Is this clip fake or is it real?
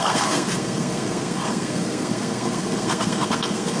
fake